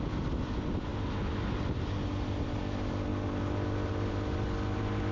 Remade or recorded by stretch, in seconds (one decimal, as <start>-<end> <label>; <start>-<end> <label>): 0.0-3.1 recorded; 3.1-4.4 remade; 4.4-5.1 recorded